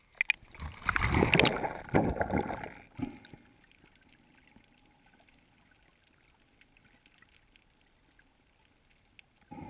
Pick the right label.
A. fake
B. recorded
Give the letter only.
B